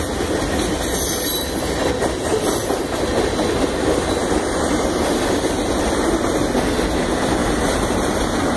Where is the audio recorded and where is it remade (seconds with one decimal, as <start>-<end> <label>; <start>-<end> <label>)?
0.0-7.4 recorded; 7.4-8.2 remade; 8.2-8.6 recorded